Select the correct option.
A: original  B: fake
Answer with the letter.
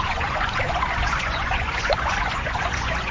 B